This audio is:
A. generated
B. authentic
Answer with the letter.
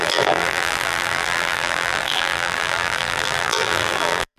A